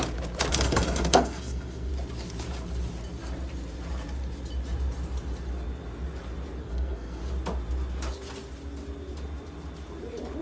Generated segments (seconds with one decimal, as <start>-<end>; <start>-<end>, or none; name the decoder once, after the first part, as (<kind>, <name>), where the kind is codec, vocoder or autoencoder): 0.5-1.9 (codec, SNAC); 6.6-7.2